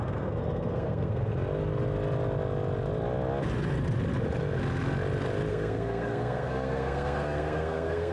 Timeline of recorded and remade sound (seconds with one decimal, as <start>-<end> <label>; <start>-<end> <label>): 0.0-1.3 remade; 1.3-5.5 recorded; 5.5-8.1 remade